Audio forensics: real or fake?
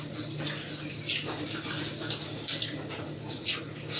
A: real